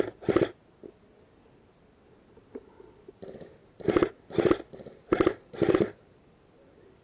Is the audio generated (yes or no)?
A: no